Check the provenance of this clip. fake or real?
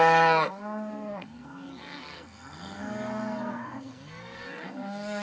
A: fake